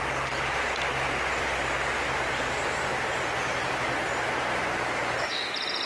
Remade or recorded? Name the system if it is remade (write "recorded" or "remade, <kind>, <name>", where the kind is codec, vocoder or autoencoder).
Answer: recorded